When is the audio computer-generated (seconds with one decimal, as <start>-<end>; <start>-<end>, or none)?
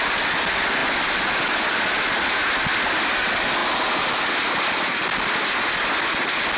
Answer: none